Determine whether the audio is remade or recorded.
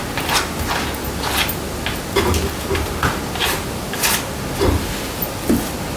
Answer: recorded